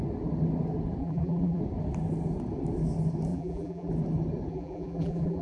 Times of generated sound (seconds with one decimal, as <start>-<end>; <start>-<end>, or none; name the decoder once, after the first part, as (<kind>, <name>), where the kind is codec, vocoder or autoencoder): 1.0-1.6 (vocoder, BigVGAN v2); 3.3-3.9; 4.5-5.4